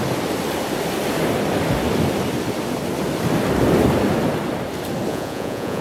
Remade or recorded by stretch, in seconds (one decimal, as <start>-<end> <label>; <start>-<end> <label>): 0.0-5.1 recorded; 5.1-5.8 remade